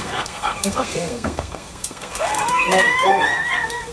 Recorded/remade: remade